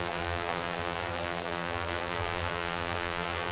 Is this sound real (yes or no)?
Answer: no